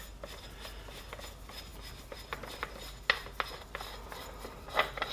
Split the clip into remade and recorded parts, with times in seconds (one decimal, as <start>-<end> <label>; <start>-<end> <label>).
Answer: 0.0-5.1 recorded